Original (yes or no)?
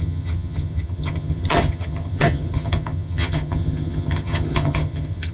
no